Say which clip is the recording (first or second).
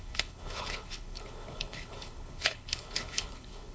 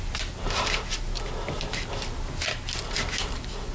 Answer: second